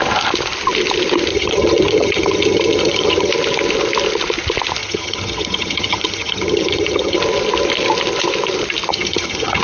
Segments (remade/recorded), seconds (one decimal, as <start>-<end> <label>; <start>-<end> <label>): 0.0-1.3 recorded; 1.3-3.3 remade; 3.3-4.8 recorded; 4.8-7.2 remade; 7.2-8.9 recorded; 8.9-9.6 remade